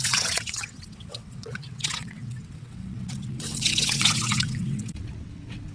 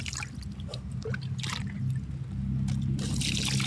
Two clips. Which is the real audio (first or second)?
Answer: second